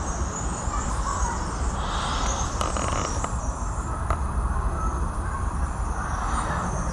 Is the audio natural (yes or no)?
no